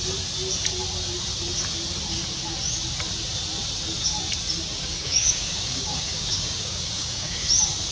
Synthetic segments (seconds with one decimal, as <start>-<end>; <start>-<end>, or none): 4.8-7.5